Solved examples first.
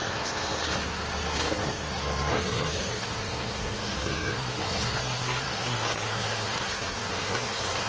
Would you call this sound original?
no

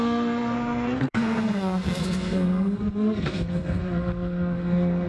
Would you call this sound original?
no